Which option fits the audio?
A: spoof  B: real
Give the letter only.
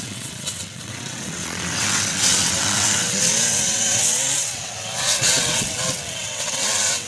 A